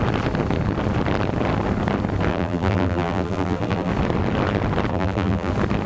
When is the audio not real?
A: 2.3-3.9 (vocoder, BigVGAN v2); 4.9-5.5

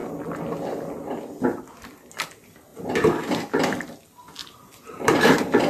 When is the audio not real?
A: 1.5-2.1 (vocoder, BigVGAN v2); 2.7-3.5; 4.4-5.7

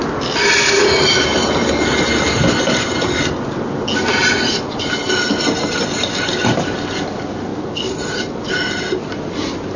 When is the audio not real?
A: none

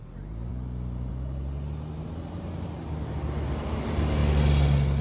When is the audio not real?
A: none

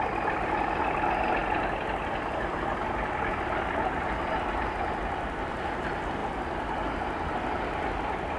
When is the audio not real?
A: none

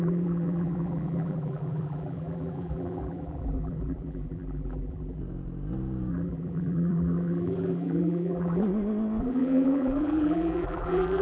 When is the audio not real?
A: 0.0-5.2 (vocoder, BigVGAN v2); 6.1-8.6; 9.2-11.2

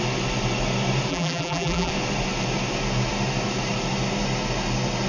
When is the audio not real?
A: 1.1-1.9 (vocoder, BigVGAN v2)